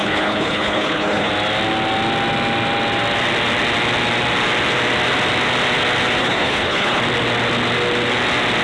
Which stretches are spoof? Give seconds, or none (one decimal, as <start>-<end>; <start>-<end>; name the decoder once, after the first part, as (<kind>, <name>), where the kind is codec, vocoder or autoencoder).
0.0-1.3 (codec, HILCodec); 6.2-7.0